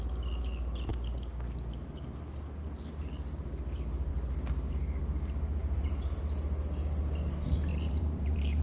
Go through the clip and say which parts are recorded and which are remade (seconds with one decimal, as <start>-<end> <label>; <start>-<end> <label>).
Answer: 0.0-5.6 recorded; 5.6-6.2 remade; 6.2-7.7 recorded; 7.7-8.6 remade